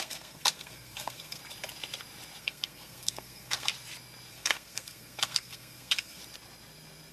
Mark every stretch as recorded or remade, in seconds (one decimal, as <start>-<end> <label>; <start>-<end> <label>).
0.0-1.4 remade; 1.4-2.4 recorded; 2.4-3.7 remade; 3.7-4.3 recorded; 4.3-6.2 remade; 6.2-7.1 recorded